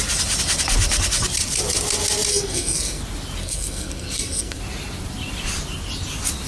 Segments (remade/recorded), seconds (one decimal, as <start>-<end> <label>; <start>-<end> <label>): 0.0-2.3 recorded; 2.3-3.0 remade; 3.0-3.4 recorded; 3.4-4.6 remade; 4.6-6.5 recorded